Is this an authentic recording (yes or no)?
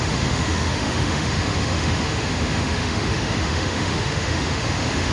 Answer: no